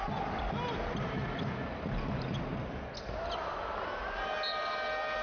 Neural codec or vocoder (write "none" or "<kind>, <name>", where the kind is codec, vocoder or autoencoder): none